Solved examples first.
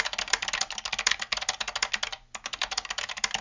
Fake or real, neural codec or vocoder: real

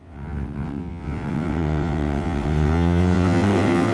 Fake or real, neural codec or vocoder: fake, vocoder, WaveNeXt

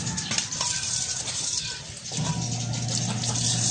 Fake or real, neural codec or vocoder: real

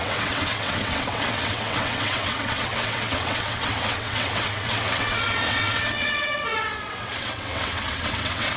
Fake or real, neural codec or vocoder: fake, vocoder, WaveNeXt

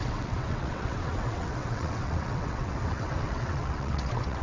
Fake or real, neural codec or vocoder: fake, vocoder, WaveNeXt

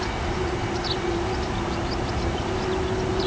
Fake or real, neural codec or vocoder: real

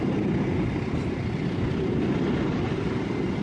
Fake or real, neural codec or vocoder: real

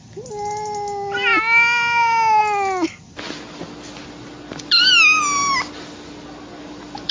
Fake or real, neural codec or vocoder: real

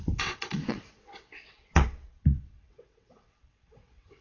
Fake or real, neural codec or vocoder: fake, vocoder, WaveNeXt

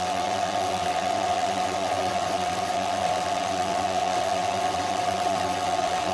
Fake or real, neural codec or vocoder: fake, vocoder, WaveNeXt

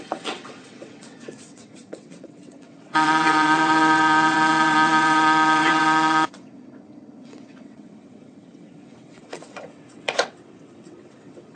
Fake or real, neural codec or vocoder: fake, vocoder, WaveNeXt